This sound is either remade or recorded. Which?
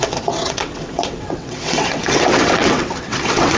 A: remade